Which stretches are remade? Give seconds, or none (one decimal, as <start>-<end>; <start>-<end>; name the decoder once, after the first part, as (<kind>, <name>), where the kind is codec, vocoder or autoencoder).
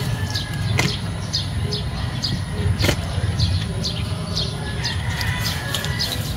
1.9-4.6 (vocoder, BigVGAN v2)